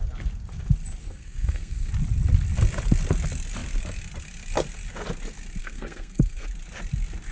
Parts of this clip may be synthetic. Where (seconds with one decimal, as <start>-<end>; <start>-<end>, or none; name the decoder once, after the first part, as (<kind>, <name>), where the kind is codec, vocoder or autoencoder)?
1.0-1.9 (codec, SNAC); 5.6-6.5